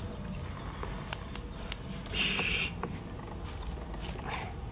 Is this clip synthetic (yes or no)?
no